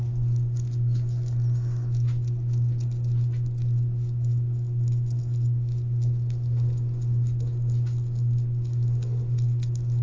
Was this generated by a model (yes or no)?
no